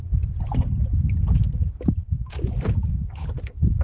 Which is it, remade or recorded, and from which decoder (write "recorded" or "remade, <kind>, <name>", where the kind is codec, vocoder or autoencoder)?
recorded